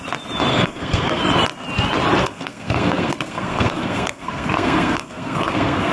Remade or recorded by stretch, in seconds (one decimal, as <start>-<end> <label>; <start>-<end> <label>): 0.0-0.5 recorded; 0.5-1.2 remade; 1.2-2.2 recorded; 2.2-5.9 remade